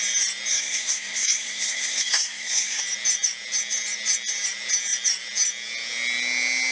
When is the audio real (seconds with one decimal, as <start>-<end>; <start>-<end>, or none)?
0.0-0.5; 2.8-6.7